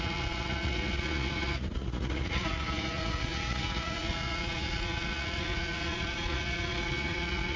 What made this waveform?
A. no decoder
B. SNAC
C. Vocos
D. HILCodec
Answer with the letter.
C